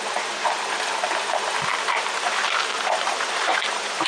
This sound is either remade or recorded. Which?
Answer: remade